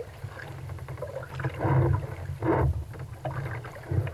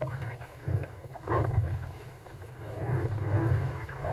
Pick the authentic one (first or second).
first